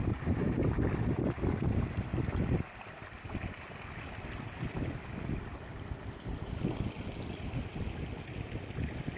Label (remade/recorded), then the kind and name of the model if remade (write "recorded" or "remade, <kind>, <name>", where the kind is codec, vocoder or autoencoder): recorded